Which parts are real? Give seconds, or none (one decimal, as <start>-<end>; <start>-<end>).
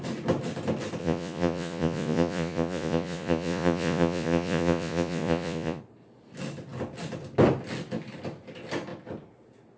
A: 0.0-1.0; 5.8-9.8